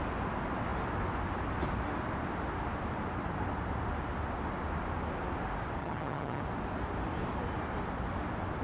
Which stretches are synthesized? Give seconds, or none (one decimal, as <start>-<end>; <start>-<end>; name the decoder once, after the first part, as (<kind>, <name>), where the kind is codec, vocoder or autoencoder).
5.8-6.4 (vocoder, HiFi-GAN)